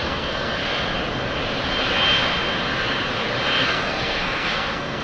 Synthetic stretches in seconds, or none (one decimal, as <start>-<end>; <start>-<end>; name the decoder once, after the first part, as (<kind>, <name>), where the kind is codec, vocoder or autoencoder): 0.0-0.6 (codec, SNAC); 3.6-5.0